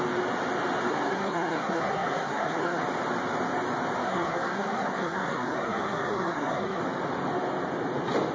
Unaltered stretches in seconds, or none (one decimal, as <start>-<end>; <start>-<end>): 0.0-0.9; 2.8-4.0; 6.8-8.3